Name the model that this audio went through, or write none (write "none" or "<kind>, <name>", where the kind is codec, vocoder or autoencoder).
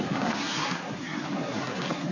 codec, SNAC